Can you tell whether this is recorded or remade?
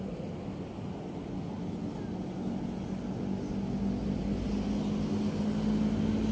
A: recorded